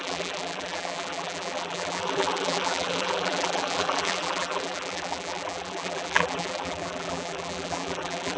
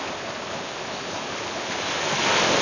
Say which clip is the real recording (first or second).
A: second